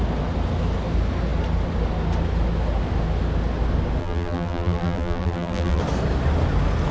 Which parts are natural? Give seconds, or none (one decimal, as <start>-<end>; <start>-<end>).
0.0-4.0; 5.8-6.9